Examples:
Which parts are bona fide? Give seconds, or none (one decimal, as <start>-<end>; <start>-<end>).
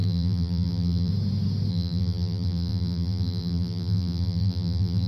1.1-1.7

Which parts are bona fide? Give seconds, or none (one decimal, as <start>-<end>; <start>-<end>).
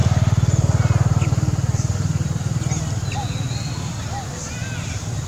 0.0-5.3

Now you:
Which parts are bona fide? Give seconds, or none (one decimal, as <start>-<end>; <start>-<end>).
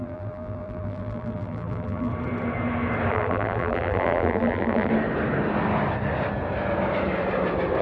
2.1-3.1; 4.9-7.8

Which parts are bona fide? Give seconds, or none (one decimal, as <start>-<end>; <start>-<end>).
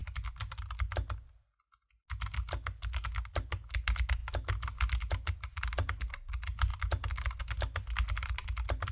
0.0-8.9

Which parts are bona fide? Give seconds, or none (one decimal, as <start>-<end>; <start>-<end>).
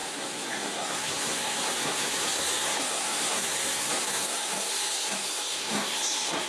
none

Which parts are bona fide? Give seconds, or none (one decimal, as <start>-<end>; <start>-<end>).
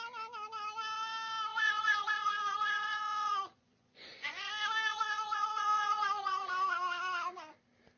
0.0-1.5; 4.5-4.9; 6.5-8.0